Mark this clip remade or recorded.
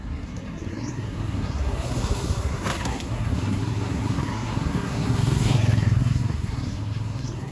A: remade